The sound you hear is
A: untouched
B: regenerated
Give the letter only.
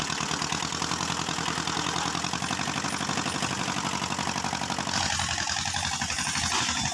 A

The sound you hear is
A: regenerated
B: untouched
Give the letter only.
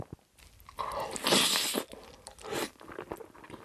B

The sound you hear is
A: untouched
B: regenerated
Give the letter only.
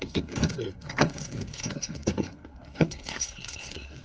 B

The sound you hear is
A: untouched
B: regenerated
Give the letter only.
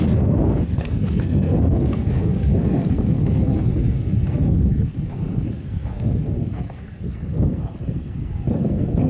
B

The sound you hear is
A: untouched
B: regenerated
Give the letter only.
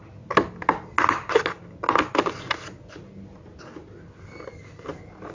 A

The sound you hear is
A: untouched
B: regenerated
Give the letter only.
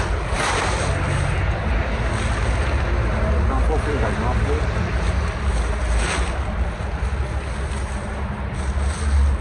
A